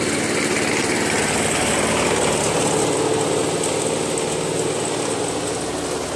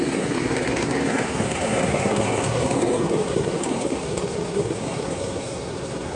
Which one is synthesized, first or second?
second